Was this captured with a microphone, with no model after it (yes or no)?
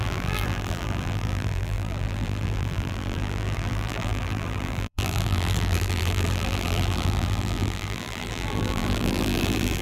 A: no